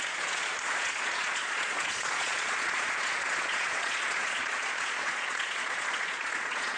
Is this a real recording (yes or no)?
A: no